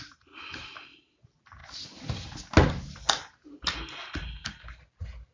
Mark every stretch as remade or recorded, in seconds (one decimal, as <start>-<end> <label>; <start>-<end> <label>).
0.0-5.3 recorded